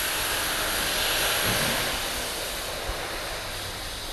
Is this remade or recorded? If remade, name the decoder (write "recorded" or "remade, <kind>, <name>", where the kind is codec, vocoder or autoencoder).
recorded